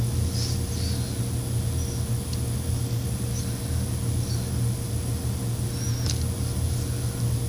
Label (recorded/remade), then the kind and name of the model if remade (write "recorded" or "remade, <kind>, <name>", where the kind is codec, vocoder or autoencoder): recorded